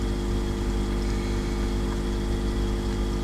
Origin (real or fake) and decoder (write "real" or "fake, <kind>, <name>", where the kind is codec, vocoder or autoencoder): real